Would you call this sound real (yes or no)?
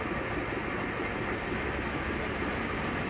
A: yes